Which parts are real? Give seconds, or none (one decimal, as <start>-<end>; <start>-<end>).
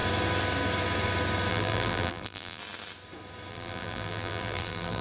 0.0-1.5; 2.6-3.5